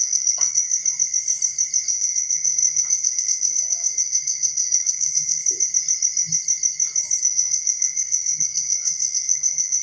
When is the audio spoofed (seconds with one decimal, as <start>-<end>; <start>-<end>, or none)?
0.0-0.7; 1.9-5.4; 7.2-9.8